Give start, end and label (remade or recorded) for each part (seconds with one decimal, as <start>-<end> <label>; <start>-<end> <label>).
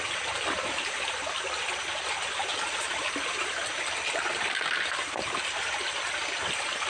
0.0-6.9 recorded